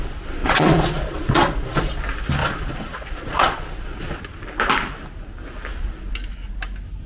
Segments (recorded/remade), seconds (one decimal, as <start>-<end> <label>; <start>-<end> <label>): 0.0-0.4 recorded; 0.4-1.9 remade; 1.9-2.4 recorded; 2.4-4.2 remade; 4.2-7.1 recorded